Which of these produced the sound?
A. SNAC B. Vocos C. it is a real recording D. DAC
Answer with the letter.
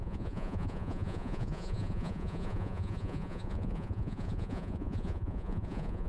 B